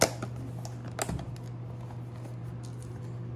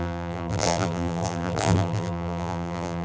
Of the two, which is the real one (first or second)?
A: first